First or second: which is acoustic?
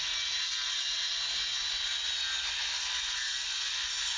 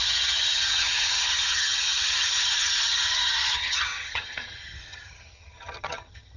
first